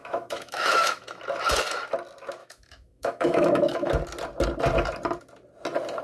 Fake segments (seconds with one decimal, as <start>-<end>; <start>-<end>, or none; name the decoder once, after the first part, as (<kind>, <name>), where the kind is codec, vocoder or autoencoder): 0.0-1.2 (autoencoder, DAC-VAE); 2.4-3.9